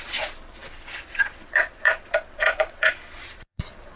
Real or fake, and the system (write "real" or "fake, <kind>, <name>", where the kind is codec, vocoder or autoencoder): fake, vocoder, Vocos